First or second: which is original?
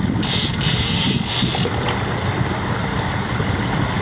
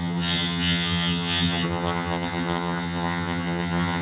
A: first